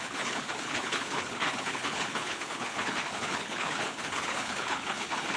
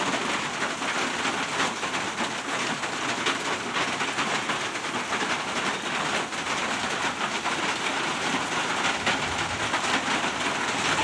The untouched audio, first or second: second